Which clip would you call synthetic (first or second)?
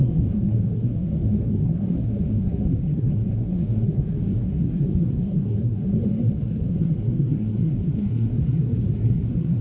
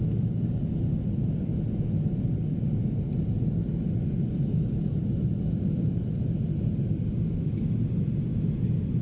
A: first